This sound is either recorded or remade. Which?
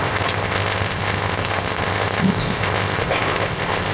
remade